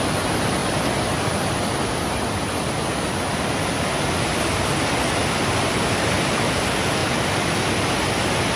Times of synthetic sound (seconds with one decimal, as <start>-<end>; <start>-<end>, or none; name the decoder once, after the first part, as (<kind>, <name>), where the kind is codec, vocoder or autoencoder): none